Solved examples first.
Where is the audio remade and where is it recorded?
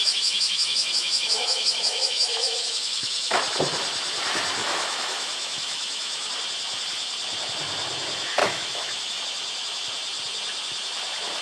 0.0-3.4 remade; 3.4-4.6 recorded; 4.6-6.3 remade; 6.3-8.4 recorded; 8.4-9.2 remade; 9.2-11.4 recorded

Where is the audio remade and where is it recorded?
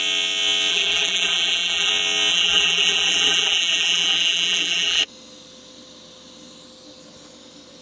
0.0-0.7 recorded; 0.7-1.9 remade; 1.9-2.3 recorded; 2.3-5.0 remade; 5.0-7.8 recorded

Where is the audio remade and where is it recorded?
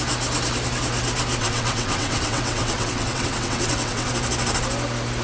0.0-1.4 recorded; 1.4-4.1 remade; 4.1-5.2 recorded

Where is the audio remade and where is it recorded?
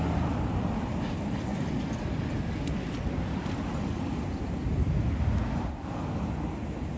0.0-7.0 recorded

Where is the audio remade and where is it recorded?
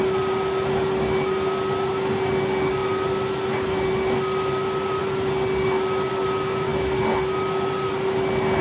0.0-8.6 recorded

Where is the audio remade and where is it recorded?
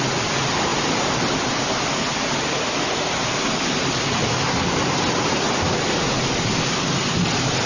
0.0-7.7 recorded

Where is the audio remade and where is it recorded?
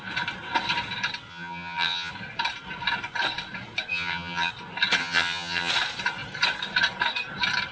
0.0-1.3 recorded; 1.3-2.1 remade; 2.1-3.9 recorded; 3.9-4.5 remade; 4.5-5.0 recorded; 5.0-5.7 remade; 5.7-7.7 recorded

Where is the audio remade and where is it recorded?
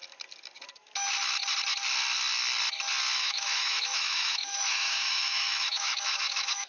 0.0-3.2 recorded; 3.2-6.7 remade